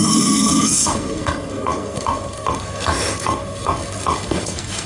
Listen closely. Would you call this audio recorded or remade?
remade